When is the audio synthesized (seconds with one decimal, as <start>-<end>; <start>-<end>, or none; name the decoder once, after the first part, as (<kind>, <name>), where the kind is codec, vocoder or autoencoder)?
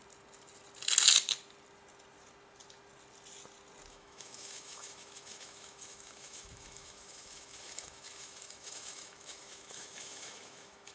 3.9-10.9 (autoencoder, DAC-VAE)